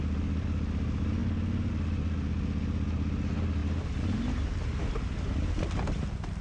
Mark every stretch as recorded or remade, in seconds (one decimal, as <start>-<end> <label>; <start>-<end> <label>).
0.0-6.4 recorded